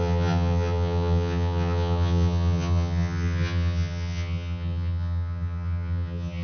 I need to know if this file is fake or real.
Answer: fake